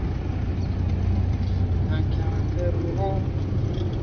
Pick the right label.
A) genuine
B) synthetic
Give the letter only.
A